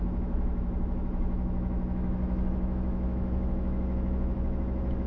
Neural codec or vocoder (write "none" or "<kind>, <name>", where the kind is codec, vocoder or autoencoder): autoencoder, DAC-VAE